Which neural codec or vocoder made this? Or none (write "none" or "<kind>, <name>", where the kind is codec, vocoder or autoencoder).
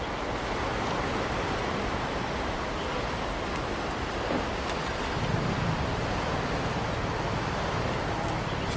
none